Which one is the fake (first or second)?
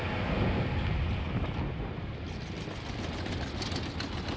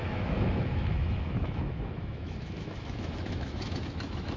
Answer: second